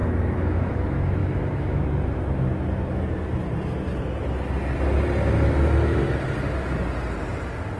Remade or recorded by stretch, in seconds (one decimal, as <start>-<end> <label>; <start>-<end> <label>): 0.0-0.7 remade; 0.7-1.2 recorded; 1.2-1.8 remade; 1.8-7.8 recorded